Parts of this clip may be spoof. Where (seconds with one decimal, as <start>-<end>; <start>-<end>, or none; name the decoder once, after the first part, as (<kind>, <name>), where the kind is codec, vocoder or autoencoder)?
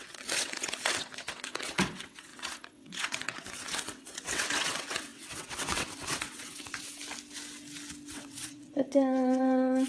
0.0-7.0 (vocoder, WaveNeXt); 8.1-9.9